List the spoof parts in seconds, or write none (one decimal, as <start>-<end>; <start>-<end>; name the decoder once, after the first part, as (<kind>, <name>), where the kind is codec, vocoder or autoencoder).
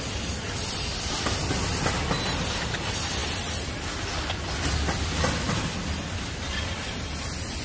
none